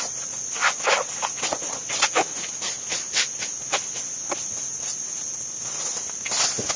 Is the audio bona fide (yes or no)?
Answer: yes